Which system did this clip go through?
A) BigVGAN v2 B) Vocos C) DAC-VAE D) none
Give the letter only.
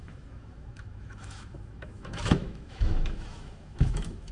C